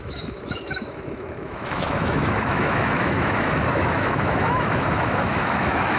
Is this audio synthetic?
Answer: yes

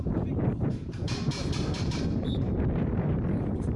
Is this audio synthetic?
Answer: yes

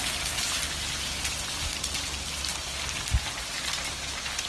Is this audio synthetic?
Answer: no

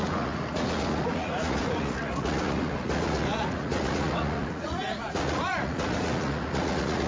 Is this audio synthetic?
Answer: yes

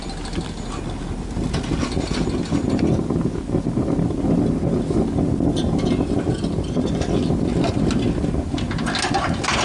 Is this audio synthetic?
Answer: no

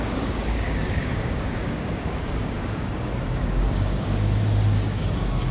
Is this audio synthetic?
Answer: yes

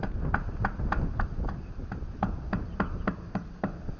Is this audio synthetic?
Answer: no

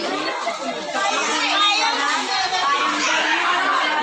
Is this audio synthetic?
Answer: no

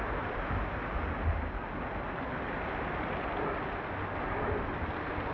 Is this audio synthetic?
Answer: no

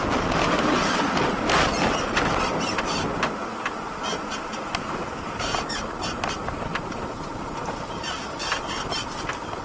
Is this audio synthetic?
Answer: no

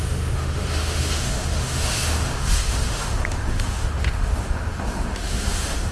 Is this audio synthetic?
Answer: yes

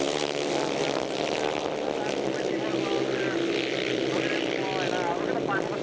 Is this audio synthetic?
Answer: no